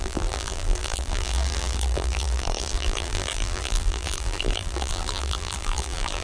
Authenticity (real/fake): fake